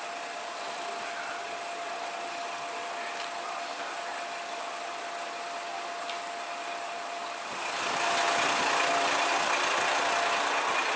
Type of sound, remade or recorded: recorded